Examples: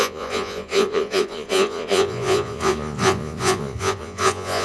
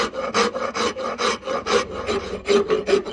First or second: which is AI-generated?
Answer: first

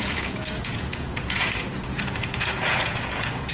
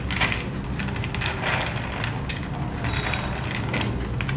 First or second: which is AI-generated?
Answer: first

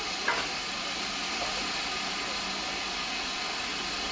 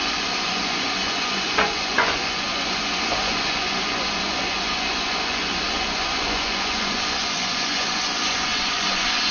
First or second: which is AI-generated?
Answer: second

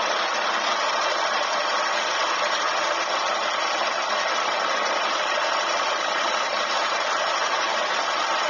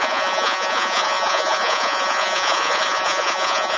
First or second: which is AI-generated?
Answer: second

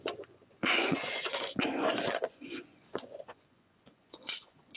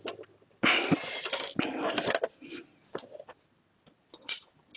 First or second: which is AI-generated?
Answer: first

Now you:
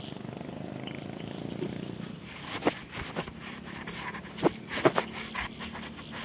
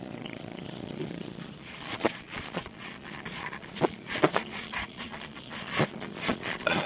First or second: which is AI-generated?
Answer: second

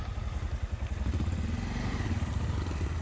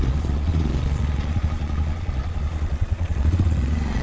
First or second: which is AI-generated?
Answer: second